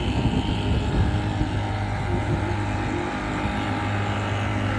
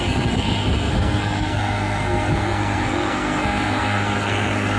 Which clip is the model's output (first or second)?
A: second